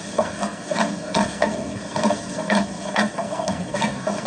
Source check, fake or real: fake